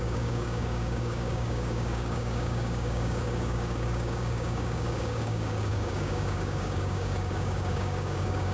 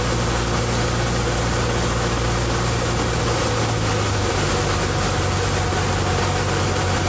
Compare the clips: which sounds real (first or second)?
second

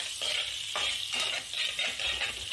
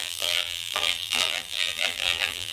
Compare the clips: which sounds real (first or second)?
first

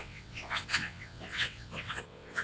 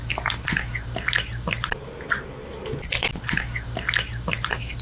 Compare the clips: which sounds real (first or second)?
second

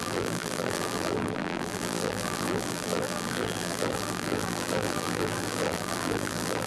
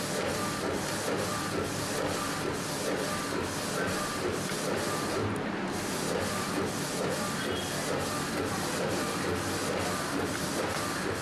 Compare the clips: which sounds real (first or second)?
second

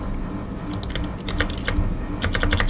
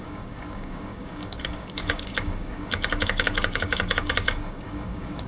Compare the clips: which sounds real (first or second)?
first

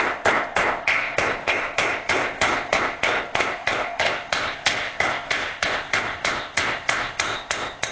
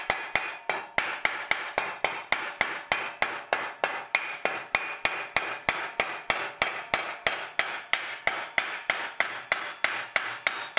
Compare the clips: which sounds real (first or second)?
second